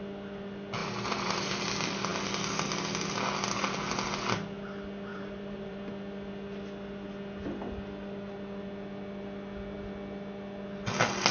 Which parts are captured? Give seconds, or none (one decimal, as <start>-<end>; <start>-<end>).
0.0-0.8; 1.5-5.1; 5.8-11.3